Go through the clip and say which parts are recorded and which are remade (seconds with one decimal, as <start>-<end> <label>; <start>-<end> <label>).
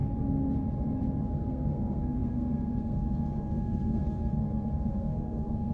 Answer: 0.0-1.2 recorded; 1.2-5.7 remade